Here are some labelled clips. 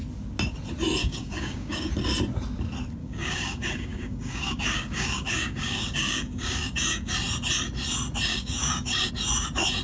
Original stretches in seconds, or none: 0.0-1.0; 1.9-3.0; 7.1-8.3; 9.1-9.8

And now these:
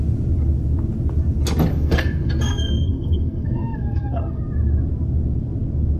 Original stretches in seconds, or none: 0.0-1.7; 4.4-6.0

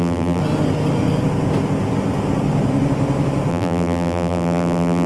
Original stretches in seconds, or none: 0.4-3.5

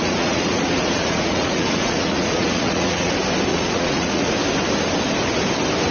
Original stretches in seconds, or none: 3.1-3.5; 4.3-5.9